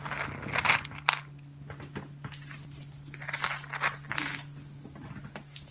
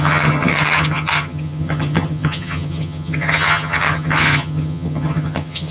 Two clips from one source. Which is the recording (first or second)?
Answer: first